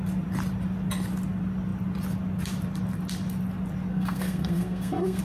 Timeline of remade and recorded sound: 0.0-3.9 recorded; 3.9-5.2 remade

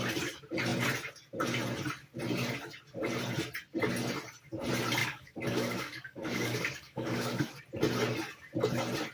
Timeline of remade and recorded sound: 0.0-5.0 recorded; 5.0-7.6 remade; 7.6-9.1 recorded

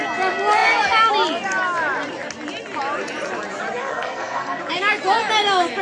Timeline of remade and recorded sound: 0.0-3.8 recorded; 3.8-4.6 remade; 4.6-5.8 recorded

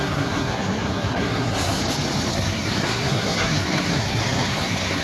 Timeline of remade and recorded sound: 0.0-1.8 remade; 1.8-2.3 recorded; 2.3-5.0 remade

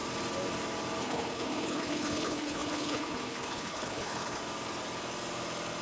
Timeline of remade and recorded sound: 0.0-1.0 recorded; 1.0-4.4 remade; 4.4-5.8 recorded

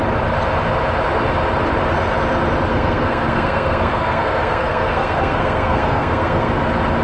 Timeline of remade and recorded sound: 0.0-2.7 recorded; 2.7-6.5 remade; 6.5-7.0 recorded